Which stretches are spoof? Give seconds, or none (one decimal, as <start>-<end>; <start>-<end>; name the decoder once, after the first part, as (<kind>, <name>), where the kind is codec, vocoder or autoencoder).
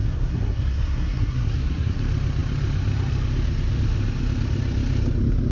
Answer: 0.0-2.0 (codec, SNAC)